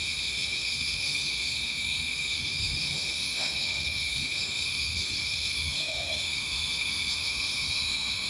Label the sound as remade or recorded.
remade